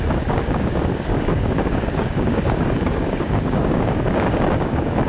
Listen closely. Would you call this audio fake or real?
fake